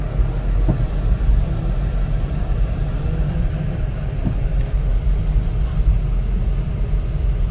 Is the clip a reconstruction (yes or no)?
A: no